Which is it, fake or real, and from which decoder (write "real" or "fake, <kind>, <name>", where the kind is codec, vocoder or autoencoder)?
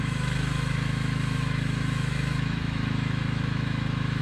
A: fake, autoencoder, DAC-VAE